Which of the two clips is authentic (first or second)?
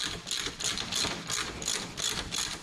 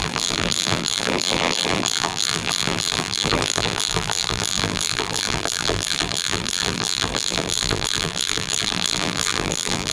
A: first